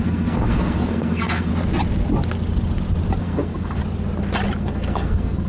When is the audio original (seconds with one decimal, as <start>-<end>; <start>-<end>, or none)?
1.5-3.2; 3.8-4.6